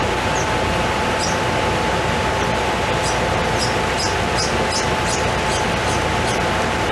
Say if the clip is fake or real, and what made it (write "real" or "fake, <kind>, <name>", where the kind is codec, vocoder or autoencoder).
fake, vocoder, BigVGAN v2